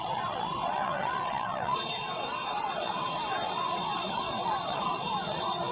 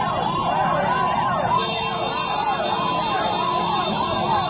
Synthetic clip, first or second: first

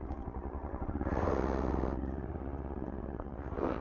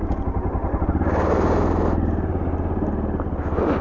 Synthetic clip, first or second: first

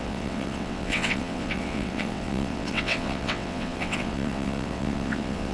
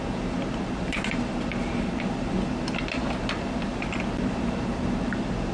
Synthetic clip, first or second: first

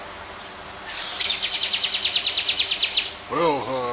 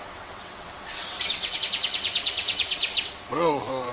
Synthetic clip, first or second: second